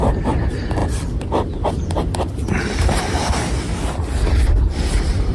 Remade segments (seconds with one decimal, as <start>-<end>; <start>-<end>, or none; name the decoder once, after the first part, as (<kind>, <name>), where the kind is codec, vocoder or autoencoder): none